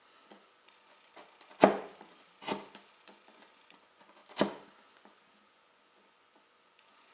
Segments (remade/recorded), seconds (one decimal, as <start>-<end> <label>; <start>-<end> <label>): 0.0-1.2 remade; 1.2-2.9 recorded; 2.9-4.2 remade; 4.2-4.7 recorded; 4.7-7.1 remade